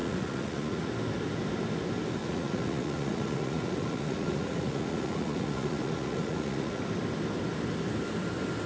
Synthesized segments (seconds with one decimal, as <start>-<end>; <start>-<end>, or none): 0.0-0.9; 2.2-6.8